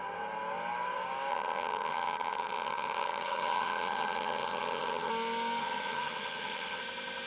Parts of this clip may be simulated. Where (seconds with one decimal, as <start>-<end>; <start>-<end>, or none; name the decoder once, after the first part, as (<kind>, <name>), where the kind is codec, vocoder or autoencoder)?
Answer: 1.3-5.1 (vocoder, HiFi-GAN); 5.6-6.8